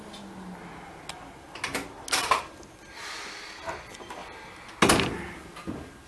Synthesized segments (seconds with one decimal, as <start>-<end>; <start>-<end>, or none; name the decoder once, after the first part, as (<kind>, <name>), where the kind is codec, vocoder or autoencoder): none